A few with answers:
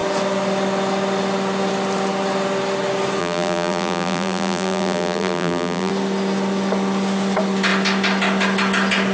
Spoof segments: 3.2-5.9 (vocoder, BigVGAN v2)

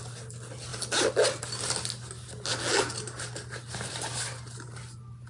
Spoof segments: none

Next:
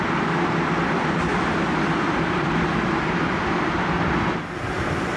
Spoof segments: 1.3-4.4 (vocoder, BigVGAN v2)